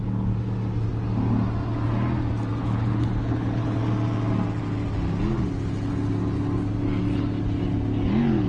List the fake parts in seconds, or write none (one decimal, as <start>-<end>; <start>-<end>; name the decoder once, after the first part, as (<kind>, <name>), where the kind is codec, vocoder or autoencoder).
2.6-3.8 (codec, HILCodec)